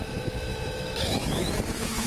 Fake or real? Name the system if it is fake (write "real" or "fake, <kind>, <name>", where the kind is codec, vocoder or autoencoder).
fake, autoencoder, DAC-VAE